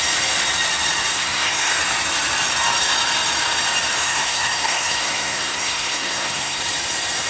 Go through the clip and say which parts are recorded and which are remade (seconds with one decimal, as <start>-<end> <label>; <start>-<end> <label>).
0.0-1.1 recorded; 1.1-1.8 remade; 1.8-4.0 recorded; 4.0-6.6 remade; 6.6-7.3 recorded